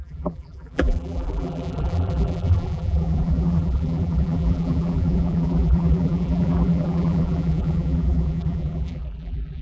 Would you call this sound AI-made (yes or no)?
yes